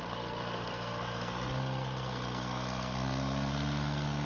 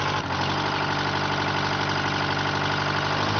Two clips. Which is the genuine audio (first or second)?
second